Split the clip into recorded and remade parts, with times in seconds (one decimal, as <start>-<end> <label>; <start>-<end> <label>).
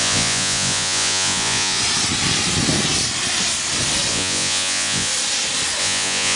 0.0-1.8 remade; 1.8-4.1 recorded; 4.1-5.1 remade; 5.1-5.8 recorded; 5.8-6.4 remade